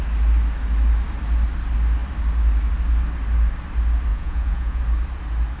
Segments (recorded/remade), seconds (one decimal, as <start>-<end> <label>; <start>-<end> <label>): 0.0-4.1 recorded; 4.1-4.8 remade; 4.8-5.6 recorded